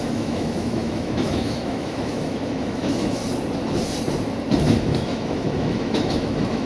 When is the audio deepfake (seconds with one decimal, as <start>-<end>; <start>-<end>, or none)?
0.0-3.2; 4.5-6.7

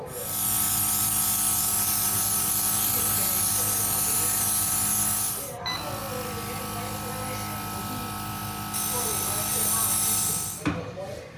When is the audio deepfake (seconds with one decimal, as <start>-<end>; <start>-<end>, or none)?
none

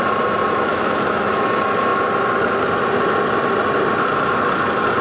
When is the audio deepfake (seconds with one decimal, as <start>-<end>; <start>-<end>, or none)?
0.7-1.5

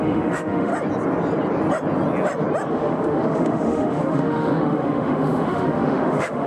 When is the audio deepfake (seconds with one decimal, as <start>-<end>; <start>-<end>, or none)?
0.0-0.7; 2.7-6.5

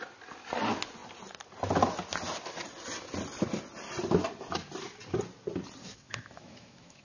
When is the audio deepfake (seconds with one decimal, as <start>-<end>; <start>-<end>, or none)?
5.8-7.0

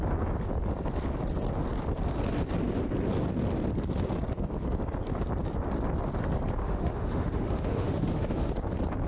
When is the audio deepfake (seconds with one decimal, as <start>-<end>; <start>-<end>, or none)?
6.6-8.5

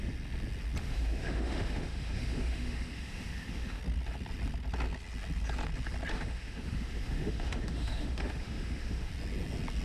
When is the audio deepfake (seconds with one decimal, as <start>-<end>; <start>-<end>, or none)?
0.8-3.8; 6.1-9.1